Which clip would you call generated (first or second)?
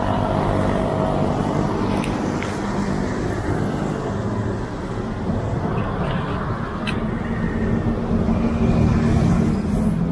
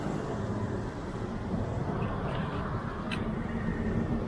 second